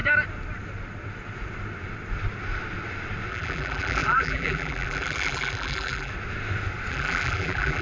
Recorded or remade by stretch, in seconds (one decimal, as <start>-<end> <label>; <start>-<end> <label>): 0.0-3.3 recorded; 3.3-6.1 remade; 6.1-6.9 recorded; 6.9-7.8 remade